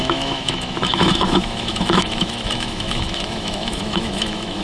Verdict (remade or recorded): remade